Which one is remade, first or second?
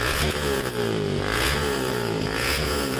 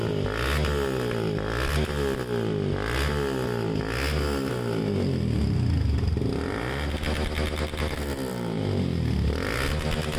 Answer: first